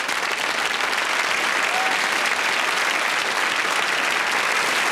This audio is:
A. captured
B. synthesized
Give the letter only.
A